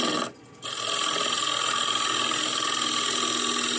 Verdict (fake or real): real